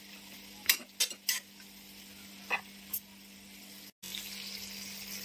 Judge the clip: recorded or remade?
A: recorded